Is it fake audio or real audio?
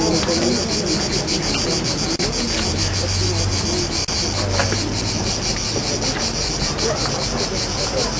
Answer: real